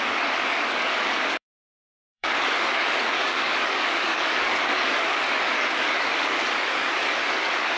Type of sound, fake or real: fake